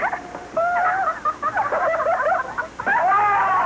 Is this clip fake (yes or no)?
no